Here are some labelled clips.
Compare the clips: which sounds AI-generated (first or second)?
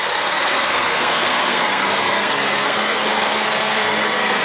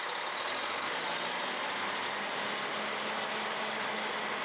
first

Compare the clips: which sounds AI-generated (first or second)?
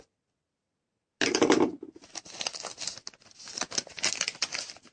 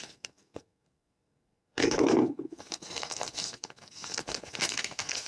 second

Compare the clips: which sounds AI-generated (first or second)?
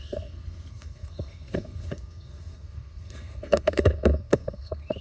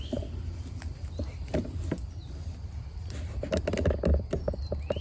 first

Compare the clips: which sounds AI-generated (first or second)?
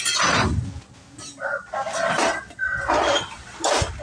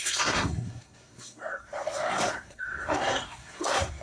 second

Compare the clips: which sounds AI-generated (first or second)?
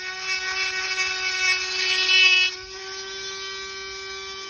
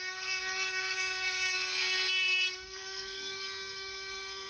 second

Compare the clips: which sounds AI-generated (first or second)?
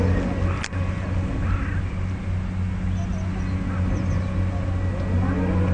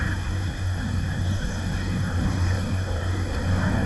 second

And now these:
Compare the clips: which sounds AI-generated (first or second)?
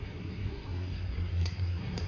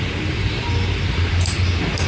first